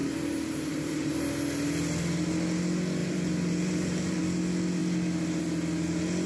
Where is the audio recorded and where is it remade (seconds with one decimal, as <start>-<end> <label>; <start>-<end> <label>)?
0.0-1.0 remade; 1.0-3.0 recorded; 3.0-4.2 remade; 4.2-6.3 recorded